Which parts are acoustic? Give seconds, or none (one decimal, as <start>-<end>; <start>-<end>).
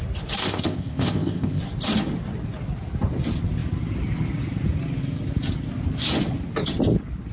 0.0-0.4; 1.6-7.3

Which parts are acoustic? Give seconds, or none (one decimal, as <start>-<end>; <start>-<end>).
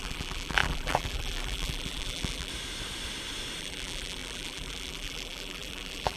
2.5-3.6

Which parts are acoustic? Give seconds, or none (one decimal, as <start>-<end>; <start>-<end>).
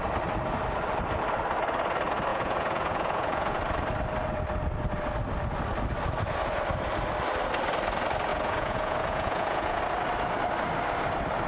0.0-2.3; 3.6-8.3; 9.8-11.5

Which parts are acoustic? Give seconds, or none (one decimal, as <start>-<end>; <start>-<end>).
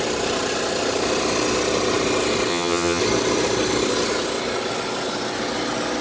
0.0-2.5; 3.0-6.0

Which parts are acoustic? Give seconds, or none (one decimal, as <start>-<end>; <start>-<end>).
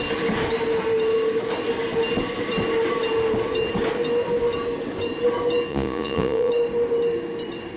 0.0-5.7; 6.5-7.8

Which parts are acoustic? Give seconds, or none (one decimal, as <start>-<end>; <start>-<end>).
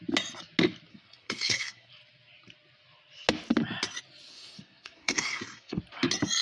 0.0-0.9; 1.9-4.3; 5.8-6.4